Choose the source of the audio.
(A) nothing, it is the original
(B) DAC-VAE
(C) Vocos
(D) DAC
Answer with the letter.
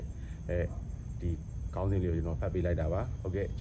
A